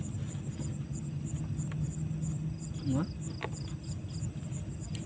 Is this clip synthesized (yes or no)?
no